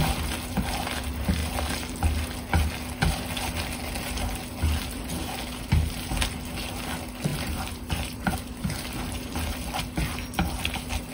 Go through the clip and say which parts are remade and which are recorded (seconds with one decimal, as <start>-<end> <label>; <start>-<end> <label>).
0.0-7.3 recorded; 7.3-9.8 remade; 9.8-11.1 recorded